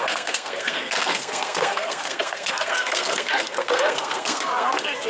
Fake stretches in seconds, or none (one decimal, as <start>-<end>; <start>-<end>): 0.0-5.1